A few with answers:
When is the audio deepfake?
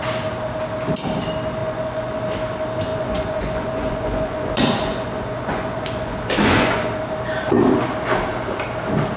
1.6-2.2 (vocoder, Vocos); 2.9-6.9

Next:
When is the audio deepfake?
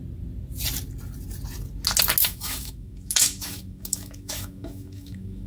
2.2-5.5 (autoencoder, DAC-VAE)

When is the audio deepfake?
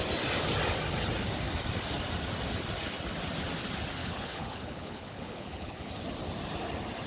4.0-5.9 (codec, HILCodec)